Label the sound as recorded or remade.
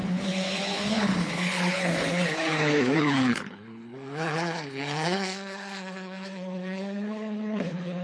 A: remade